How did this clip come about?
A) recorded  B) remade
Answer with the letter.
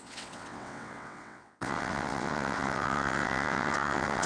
B